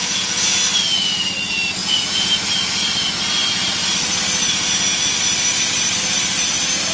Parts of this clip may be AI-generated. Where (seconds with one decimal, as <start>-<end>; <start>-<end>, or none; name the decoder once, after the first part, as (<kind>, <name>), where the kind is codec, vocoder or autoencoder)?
0.0-0.6 (vocoder, Vocos); 1.8-2.3